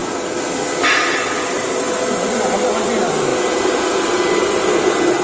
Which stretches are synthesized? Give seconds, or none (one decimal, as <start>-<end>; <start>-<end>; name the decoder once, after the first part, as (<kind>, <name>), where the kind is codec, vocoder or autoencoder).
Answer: none